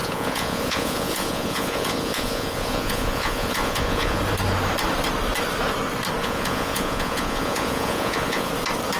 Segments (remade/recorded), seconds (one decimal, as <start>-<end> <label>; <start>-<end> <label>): 0.0-4.2 remade; 4.2-6.2 recorded; 6.2-8.5 remade; 8.5-9.0 recorded